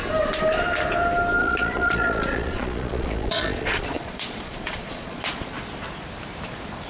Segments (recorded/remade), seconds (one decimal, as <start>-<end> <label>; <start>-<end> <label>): 0.0-1.4 recorded; 1.4-5.5 remade; 5.5-6.9 recorded